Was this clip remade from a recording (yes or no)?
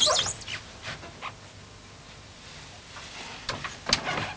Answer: no